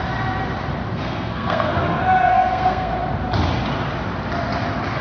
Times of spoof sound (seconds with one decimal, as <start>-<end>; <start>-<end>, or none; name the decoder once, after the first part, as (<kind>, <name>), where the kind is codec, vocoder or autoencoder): 0.9-1.8 (codec, SNAC); 2.3-2.9